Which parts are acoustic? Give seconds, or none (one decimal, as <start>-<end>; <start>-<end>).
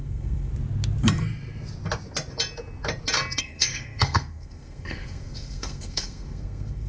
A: 0.5-3.4